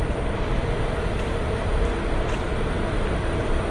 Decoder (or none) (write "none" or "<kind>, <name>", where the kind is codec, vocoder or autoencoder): vocoder, BigVGAN v2